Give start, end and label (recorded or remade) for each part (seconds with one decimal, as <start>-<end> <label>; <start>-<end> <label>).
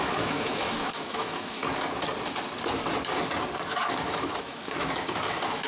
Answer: 0.0-1.6 remade; 1.6-3.7 recorded; 3.7-5.7 remade